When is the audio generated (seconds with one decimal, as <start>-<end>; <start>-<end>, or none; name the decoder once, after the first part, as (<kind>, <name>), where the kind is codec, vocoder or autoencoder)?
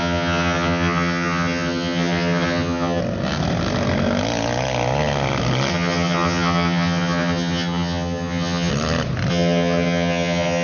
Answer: 0.0-3.0 (vocoder, HiFi-GAN); 5.7-8.7; 9.3-10.6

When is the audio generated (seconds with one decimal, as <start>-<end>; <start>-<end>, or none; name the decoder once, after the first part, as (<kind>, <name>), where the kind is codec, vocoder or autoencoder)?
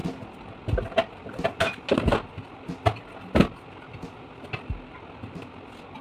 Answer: none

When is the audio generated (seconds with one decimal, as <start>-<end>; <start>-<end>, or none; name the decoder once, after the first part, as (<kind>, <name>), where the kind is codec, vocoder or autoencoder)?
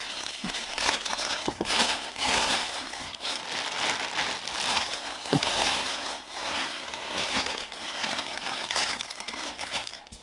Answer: 0.0-3.4 (codec, SNAC); 4.7-10.2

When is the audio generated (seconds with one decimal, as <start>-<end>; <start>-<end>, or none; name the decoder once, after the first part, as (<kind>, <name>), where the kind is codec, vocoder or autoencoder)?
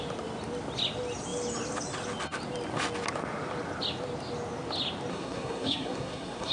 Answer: 5.1-6.5 (codec, SNAC)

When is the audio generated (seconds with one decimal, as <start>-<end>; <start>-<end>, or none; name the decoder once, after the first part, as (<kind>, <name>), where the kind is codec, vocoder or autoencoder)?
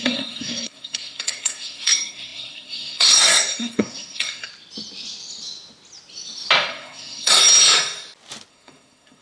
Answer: 0.0-4.5 (codec, SNAC); 6.7-7.4; 8.5-9.2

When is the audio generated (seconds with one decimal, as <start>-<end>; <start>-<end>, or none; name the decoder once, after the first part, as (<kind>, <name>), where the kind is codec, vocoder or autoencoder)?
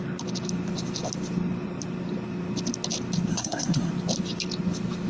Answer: 3.3-3.9 (codec, SNAC)